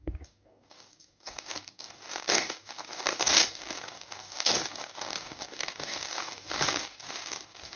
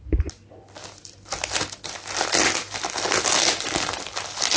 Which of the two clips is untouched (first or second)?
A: second